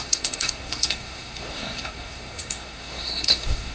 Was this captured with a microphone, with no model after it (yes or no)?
no